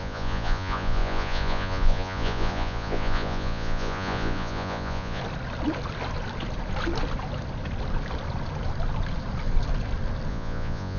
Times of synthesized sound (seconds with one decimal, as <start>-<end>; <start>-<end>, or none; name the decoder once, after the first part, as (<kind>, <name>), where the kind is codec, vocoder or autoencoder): 0.0-5.2 (vocoder, Vocos); 10.3-11.0